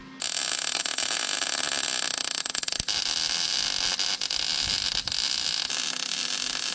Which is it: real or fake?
real